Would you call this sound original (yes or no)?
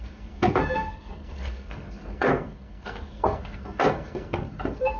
no